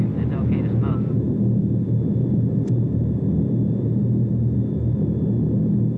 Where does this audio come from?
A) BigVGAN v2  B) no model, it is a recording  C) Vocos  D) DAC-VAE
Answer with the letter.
B